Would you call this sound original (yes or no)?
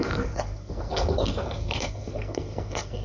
no